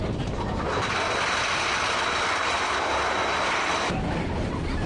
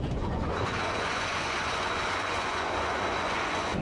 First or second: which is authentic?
first